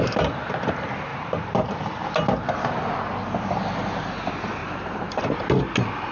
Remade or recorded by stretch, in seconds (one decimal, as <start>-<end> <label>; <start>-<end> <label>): 0.0-1.1 recorded; 1.1-1.7 remade; 1.7-4.6 recorded; 4.6-5.2 remade; 5.2-6.1 recorded